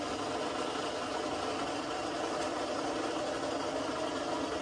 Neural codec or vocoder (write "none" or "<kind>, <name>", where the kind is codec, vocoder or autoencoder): none